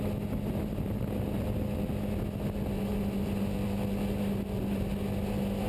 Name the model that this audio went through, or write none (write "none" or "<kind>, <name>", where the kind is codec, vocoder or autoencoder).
none